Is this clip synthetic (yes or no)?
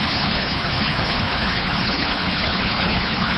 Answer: yes